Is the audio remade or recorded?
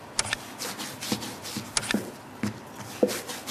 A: recorded